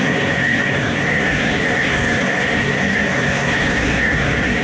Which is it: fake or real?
fake